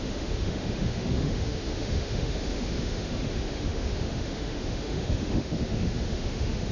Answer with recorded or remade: remade